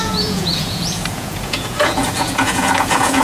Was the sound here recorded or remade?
remade